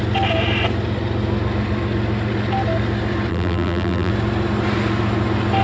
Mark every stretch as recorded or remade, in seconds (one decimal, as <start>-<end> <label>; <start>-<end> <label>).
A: 0.0-3.3 recorded; 3.3-4.1 remade; 4.1-5.6 recorded